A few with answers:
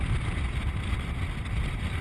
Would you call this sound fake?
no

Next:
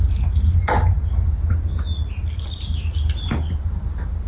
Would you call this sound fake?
no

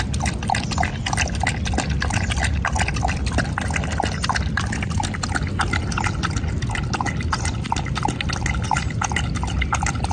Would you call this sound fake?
no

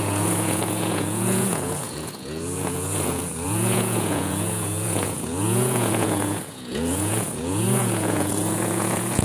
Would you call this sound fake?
yes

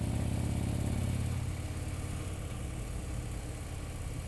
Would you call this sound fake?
no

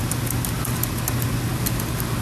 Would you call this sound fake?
no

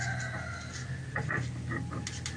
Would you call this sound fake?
no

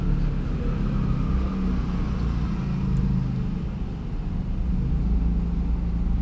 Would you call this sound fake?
no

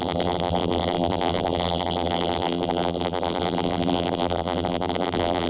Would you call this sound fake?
yes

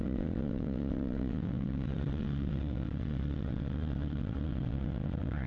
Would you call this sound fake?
yes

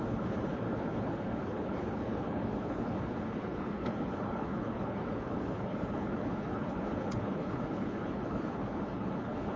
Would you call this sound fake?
yes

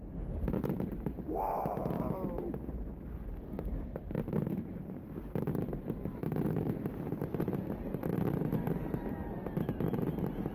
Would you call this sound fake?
yes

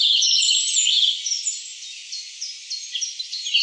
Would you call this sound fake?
no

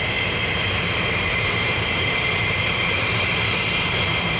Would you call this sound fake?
yes